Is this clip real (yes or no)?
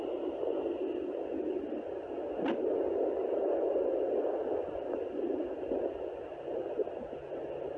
yes